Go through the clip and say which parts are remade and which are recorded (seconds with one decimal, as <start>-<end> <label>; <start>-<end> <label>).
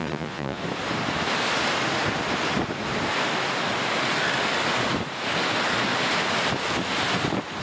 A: 0.0-0.6 remade; 0.6-7.6 recorded